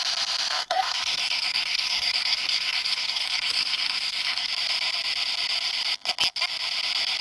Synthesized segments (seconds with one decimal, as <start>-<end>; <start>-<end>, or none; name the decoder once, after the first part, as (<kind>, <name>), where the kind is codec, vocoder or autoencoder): 0.6-4.5 (codec, SNAC)